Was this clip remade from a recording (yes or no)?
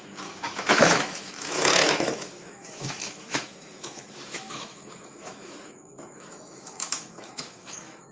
yes